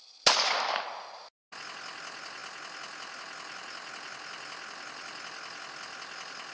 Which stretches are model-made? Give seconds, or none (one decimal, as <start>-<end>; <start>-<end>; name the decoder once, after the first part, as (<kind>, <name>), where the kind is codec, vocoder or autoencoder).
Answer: none